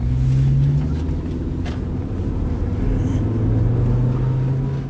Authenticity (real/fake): real